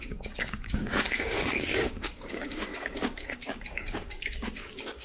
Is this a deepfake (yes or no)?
yes